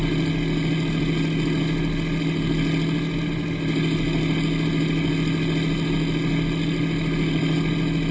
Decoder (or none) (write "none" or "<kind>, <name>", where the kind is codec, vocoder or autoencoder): none